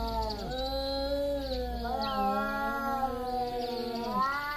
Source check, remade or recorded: recorded